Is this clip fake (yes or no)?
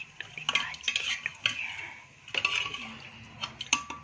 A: no